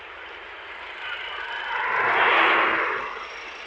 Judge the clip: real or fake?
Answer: real